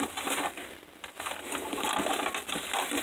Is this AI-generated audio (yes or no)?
no